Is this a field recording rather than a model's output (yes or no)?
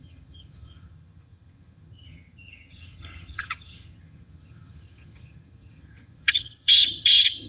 no